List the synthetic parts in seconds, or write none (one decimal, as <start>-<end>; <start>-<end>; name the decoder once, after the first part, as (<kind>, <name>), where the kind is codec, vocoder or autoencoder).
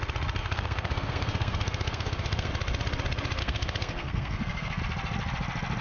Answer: 0.4-2.5 (codec, SNAC); 3.4-4.8